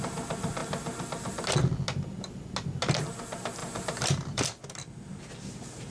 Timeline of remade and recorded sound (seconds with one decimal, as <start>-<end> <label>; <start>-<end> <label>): 0.0-3.6 recorded; 3.6-4.4 remade; 4.4-5.9 recorded

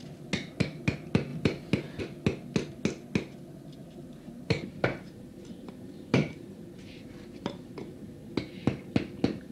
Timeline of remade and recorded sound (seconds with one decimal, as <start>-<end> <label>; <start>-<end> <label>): 0.0-3.8 recorded; 3.8-8.0 remade; 8.0-9.5 recorded

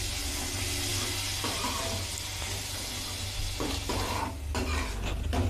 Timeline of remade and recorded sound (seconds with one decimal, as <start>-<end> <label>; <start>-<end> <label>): 0.0-5.5 recorded

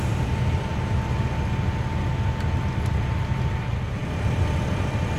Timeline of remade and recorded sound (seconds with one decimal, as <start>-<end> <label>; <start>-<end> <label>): 0.0-0.7 remade; 0.7-2.9 recorded; 2.9-5.2 remade

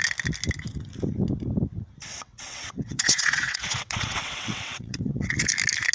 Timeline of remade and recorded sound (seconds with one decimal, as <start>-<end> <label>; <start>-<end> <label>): 0.0-2.1 recorded; 2.1-5.5 remade; 5.5-5.9 recorded

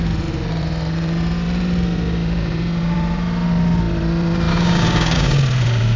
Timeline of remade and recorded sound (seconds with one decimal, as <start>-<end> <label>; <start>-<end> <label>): 0.0-4.5 recorded; 4.5-5.4 remade; 5.4-6.0 recorded